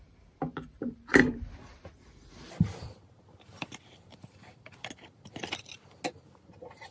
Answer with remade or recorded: recorded